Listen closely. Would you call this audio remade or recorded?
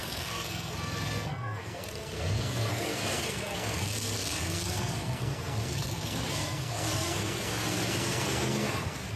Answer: remade